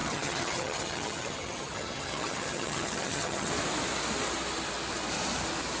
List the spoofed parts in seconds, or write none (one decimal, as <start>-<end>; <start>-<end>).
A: 0.0-3.5